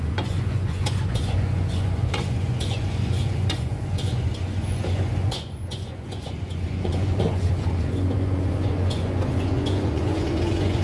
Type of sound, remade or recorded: remade